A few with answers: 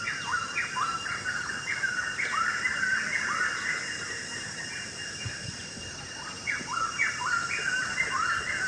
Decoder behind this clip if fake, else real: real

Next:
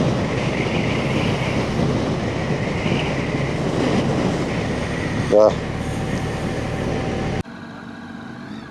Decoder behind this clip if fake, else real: real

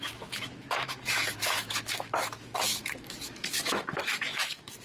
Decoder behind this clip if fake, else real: fake, autoencoder, DAC-VAE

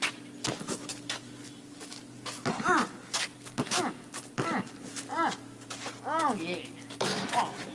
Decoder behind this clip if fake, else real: real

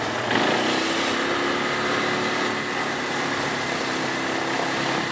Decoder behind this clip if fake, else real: real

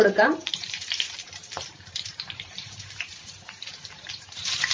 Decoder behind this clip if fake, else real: fake, vocoder, BigVGAN v2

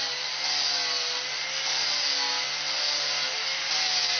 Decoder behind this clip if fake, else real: real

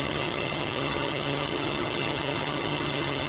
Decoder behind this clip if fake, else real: fake, vocoder, HiFi-GAN